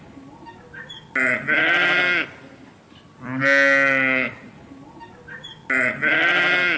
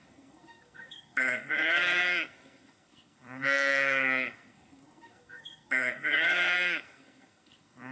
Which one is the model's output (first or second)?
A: second